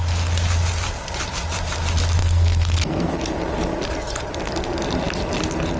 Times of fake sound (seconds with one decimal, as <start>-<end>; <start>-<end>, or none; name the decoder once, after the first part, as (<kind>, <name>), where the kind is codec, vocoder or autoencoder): 2.2-3.1 (codec, SNAC)